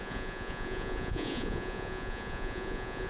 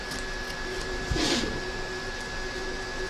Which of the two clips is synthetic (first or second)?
first